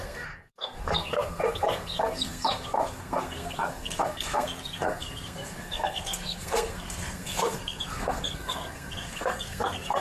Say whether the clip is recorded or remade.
remade